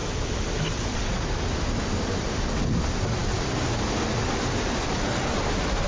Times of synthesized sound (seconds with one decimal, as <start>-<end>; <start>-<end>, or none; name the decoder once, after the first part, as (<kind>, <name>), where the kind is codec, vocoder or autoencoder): none